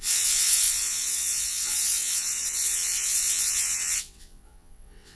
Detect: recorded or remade remade